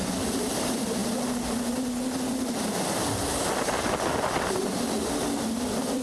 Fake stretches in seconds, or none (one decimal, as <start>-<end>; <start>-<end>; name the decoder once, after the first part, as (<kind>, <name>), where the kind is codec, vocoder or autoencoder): 0.0-1.0 (vocoder, BigVGAN v2); 4.6-6.0